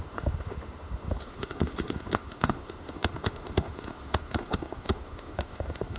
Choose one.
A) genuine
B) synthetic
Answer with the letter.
B